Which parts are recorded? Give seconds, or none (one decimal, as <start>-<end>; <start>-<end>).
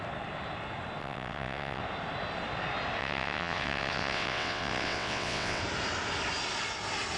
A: 0.0-1.0; 1.8-3.0; 5.6-7.2